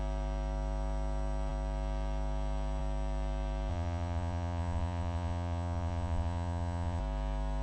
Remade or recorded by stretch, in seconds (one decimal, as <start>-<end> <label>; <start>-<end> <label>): 0.0-3.7 recorded; 3.7-7.0 remade; 7.0-7.6 recorded